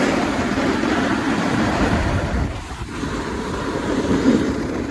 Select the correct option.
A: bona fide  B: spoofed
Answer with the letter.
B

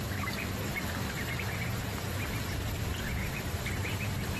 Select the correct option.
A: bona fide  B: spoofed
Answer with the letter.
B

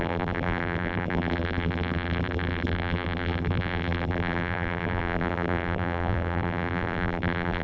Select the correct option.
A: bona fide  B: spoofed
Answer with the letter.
B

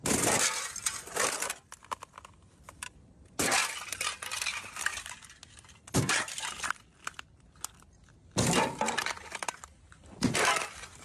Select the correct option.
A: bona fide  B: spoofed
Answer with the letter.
A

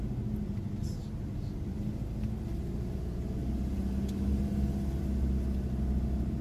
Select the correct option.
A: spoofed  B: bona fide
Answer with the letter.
B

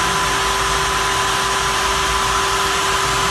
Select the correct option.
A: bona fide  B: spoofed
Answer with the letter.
A